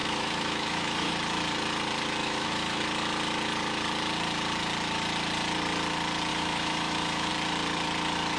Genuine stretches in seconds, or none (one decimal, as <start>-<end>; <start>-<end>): 1.1-2.2; 2.8-6.3; 7.3-8.4